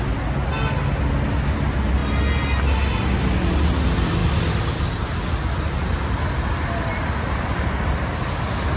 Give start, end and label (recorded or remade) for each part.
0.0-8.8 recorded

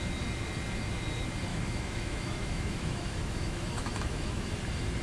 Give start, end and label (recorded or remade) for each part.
0.0-1.5 recorded; 1.5-4.5 remade; 4.5-5.0 recorded

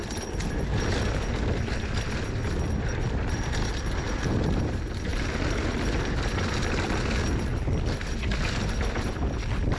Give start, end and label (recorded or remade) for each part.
0.0-9.8 recorded